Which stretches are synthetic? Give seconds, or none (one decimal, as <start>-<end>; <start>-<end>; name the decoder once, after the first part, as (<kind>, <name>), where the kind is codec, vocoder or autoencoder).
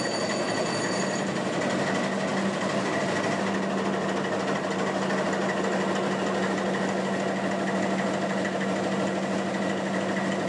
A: none